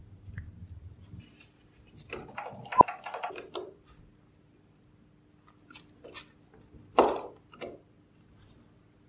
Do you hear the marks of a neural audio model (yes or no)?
no